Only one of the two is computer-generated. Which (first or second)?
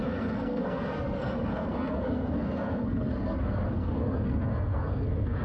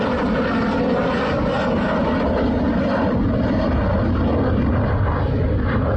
first